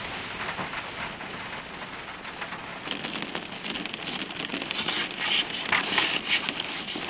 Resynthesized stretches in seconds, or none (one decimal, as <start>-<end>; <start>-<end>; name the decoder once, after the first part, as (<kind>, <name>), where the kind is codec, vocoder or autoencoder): none